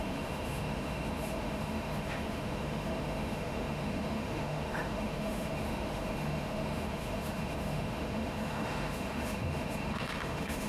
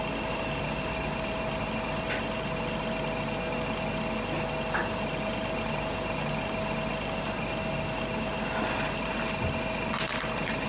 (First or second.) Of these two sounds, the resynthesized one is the first